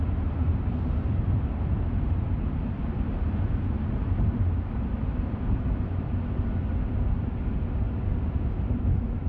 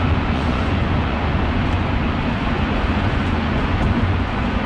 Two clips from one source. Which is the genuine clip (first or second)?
first